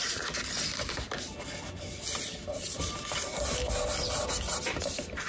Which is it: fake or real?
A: real